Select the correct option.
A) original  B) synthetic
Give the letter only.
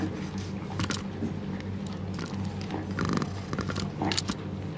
A